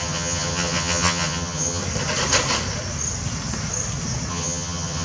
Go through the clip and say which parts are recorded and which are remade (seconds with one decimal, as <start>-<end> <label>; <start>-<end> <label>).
0.0-1.8 remade; 1.8-4.3 recorded; 4.3-5.0 remade